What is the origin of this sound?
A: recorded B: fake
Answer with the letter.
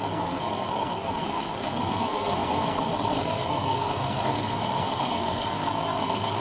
B